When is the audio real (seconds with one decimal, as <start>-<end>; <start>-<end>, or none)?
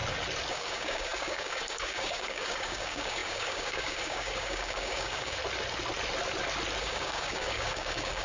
0.0-0.5; 5.4-6.8